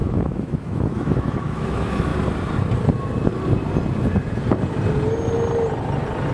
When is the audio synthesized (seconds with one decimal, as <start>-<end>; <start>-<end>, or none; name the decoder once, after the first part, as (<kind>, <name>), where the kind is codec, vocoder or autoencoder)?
0.0-2.1 (autoencoder, DAC-VAE)